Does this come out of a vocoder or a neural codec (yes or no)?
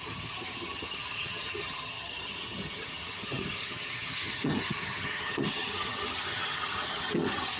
yes